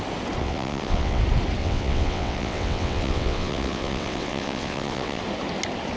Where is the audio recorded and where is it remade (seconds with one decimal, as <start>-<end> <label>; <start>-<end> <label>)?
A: 0.0-0.4 recorded; 0.4-1.2 remade; 1.2-1.6 recorded; 1.6-5.2 remade; 5.2-6.0 recorded